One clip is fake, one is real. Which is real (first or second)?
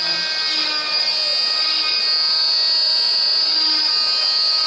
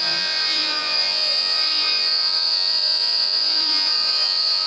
first